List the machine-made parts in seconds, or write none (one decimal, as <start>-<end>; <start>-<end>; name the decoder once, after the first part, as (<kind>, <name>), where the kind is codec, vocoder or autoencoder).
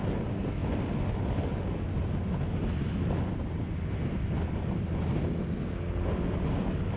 none